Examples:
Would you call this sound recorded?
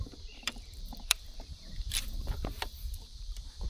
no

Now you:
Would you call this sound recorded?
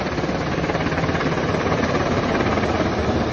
no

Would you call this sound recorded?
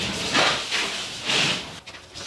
yes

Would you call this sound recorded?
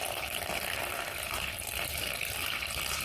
no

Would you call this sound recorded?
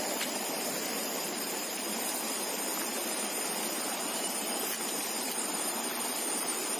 no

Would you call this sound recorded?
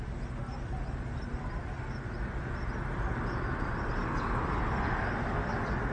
yes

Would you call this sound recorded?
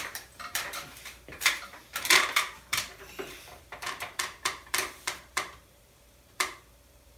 no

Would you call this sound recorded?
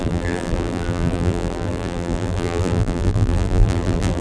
no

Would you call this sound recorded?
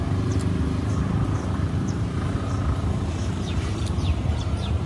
no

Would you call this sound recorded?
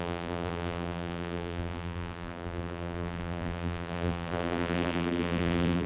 no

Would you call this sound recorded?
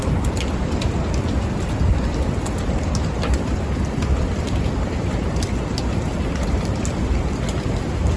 no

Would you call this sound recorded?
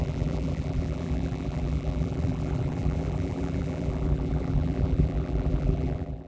no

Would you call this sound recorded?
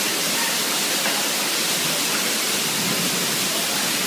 yes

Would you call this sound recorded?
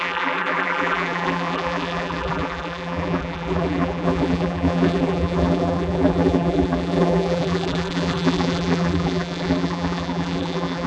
no